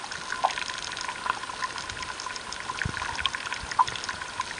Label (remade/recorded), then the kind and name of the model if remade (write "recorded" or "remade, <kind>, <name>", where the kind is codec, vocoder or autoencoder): recorded